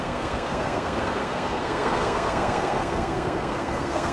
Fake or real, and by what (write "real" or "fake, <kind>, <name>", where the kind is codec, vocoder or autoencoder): fake, codec, SNAC